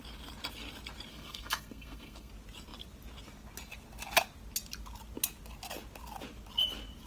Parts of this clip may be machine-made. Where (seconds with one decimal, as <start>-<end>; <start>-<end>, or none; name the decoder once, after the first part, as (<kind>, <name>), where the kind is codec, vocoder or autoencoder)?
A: 1.1-2.3 (codec, SNAC)